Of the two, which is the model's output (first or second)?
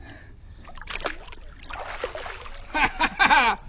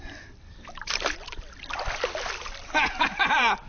second